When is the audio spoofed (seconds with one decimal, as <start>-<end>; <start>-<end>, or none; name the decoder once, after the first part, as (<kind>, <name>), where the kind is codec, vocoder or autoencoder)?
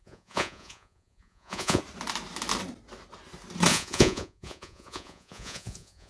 0.0-1.8 (vocoder, Vocos); 3.7-6.1